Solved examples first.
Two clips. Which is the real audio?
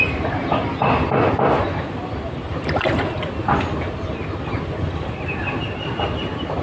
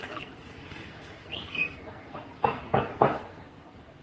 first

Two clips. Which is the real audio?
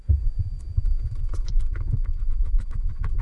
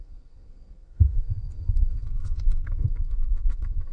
first